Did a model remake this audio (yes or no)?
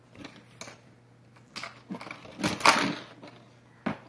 no